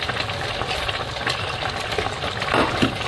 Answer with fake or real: real